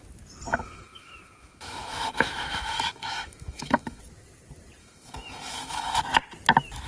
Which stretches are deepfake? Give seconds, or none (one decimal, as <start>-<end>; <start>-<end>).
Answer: 0.5-4.0; 4.8-6.0